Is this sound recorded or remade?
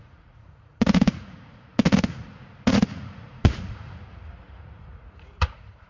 remade